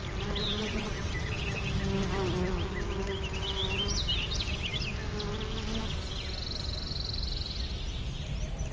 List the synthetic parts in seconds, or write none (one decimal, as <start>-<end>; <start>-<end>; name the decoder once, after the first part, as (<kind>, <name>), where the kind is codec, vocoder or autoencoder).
0.6-1.1 (vocoder, WaveNeXt)